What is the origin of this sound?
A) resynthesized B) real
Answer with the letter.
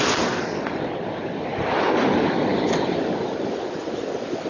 B